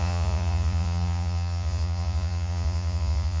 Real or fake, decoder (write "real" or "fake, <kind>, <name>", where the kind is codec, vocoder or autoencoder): fake, vocoder, Vocos